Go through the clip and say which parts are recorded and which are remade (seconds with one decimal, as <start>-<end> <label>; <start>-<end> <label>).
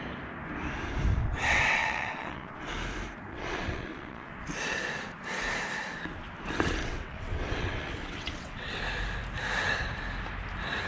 0.0-1.2 recorded; 1.2-2.7 remade; 2.7-3.3 recorded; 3.3-4.3 remade; 4.3-6.8 recorded; 6.8-8.8 remade; 8.8-10.9 recorded